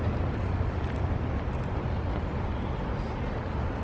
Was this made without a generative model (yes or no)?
yes